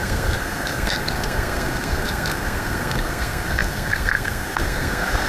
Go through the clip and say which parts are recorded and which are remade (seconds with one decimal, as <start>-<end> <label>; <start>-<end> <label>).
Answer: 0.0-5.3 remade